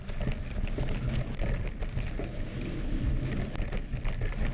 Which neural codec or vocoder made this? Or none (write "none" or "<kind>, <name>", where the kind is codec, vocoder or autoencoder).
none